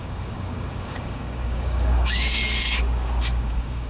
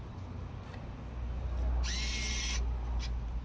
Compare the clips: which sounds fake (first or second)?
first